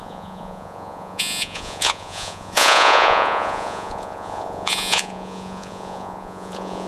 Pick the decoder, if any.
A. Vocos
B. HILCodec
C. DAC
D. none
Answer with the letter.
A